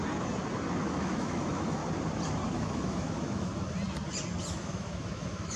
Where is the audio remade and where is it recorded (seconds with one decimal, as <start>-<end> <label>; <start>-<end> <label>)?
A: 0.0-0.8 recorded; 0.8-1.8 remade; 1.8-2.5 recorded; 2.5-3.5 remade; 3.5-4.5 recorded; 4.5-5.6 remade